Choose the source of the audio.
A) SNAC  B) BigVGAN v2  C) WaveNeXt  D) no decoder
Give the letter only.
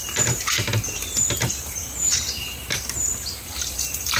B